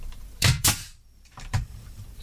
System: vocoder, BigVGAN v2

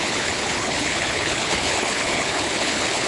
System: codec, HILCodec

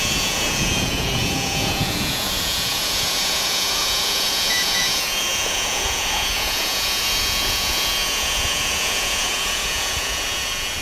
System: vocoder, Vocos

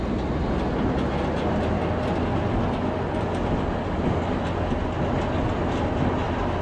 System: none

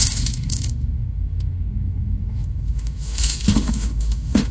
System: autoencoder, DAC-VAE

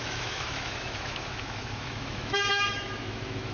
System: autoencoder, DAC-VAE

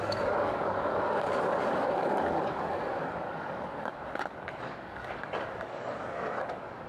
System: codec, DAC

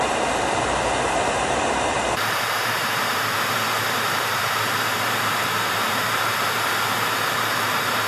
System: vocoder, BigVGAN v2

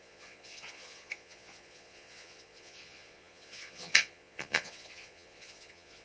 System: vocoder, Vocos